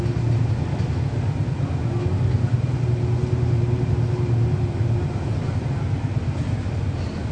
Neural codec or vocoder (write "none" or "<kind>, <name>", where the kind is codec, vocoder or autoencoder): none